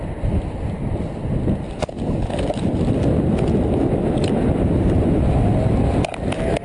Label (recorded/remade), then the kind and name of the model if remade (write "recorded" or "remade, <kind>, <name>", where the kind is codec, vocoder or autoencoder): recorded